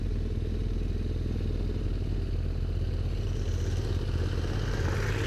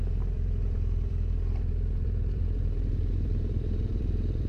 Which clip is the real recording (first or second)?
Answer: first